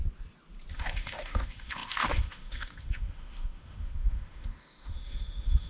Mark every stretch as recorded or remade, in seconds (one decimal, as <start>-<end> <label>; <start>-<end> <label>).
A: 0.0-0.7 recorded; 0.7-5.7 remade